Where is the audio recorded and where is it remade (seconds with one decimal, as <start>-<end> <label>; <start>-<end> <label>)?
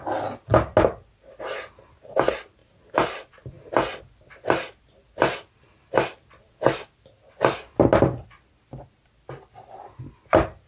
0.0-10.7 recorded